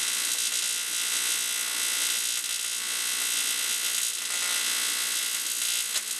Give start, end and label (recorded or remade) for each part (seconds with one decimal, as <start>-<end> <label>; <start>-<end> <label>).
0.0-6.2 recorded